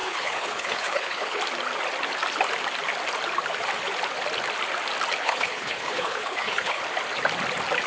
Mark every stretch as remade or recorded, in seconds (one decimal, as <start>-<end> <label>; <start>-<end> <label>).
0.0-1.4 remade; 1.4-5.2 recorded; 5.2-6.8 remade; 6.8-7.9 recorded